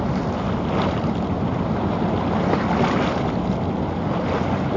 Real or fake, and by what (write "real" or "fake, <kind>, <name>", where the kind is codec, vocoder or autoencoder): real